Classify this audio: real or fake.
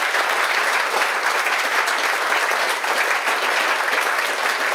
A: fake